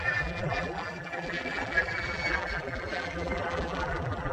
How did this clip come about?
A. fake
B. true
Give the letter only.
A